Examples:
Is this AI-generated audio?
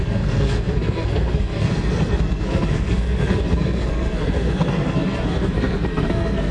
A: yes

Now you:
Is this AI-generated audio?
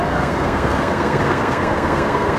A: yes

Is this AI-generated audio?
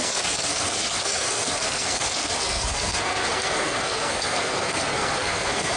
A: yes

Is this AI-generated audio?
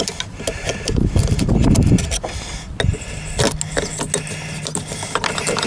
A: no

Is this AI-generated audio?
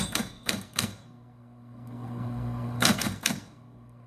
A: yes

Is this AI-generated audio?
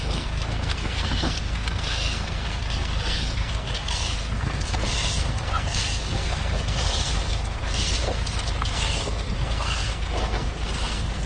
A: yes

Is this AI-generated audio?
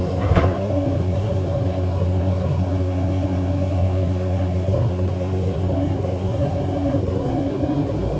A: yes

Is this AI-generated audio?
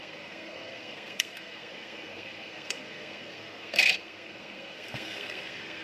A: yes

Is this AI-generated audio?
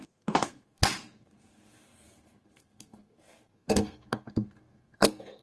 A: yes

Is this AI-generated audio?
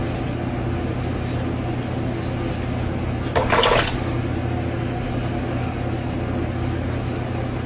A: no